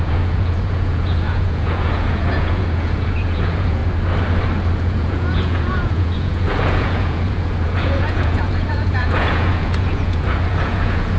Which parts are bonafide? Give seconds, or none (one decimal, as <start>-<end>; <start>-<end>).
3.8-4.8

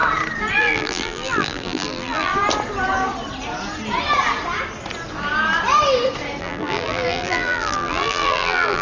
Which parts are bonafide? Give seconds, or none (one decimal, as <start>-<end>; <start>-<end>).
0.0-0.6; 2.3-6.4